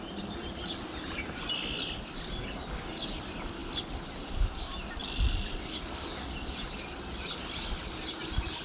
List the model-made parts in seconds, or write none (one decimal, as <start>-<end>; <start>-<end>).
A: none